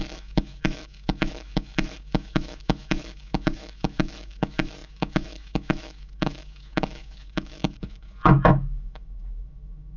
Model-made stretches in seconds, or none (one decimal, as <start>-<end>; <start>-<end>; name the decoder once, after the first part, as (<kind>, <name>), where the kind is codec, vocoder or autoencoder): 0.0-10.0 (autoencoder, DAC-VAE)